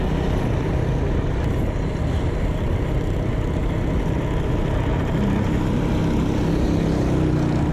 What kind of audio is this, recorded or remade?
recorded